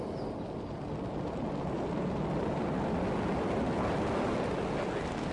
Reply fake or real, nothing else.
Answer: real